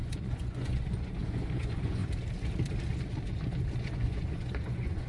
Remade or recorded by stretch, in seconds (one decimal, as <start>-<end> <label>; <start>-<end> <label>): 0.0-2.0 remade; 2.0-3.8 recorded; 3.8-5.1 remade